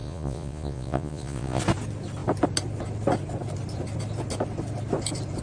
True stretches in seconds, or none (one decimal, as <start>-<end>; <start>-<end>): 1.6-5.4